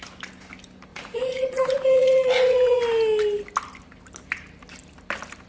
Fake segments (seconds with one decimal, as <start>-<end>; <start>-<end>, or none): 0.9-2.8